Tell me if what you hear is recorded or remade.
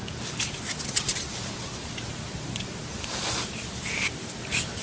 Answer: recorded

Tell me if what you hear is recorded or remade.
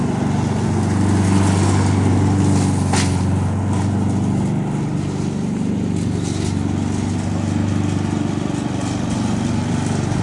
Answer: recorded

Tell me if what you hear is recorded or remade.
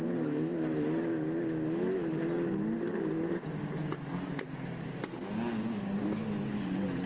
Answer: recorded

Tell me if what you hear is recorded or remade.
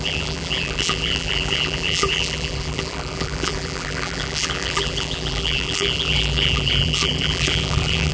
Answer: remade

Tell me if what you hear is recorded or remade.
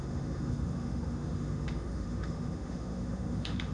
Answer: remade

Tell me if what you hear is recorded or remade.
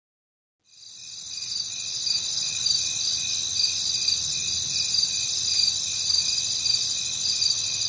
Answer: recorded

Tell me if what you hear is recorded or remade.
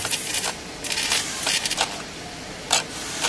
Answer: recorded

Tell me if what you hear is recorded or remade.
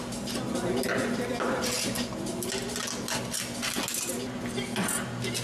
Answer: recorded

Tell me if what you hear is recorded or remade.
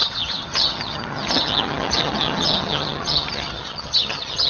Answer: remade